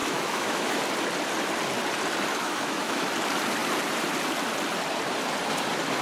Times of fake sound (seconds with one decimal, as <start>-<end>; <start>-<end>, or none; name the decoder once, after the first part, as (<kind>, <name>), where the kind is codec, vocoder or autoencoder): 0.0-0.8 (autoencoder, DAC-VAE); 2.3-3.1